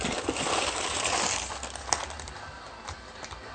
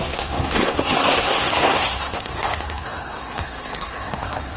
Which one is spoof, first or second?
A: second